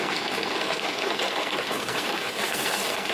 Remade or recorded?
remade